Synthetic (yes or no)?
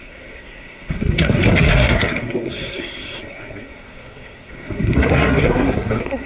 yes